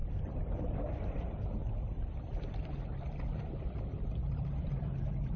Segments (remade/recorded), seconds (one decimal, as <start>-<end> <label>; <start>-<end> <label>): 0.0-5.4 remade